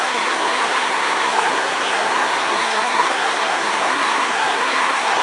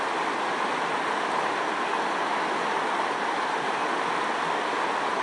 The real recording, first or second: second